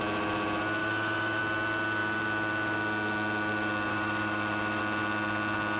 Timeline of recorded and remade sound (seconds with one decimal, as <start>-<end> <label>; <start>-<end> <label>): 0.0-0.8 recorded; 0.8-1.4 remade; 1.4-3.9 recorded; 3.9-4.8 remade; 4.8-5.8 recorded